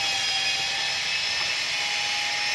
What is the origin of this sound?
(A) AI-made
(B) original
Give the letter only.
B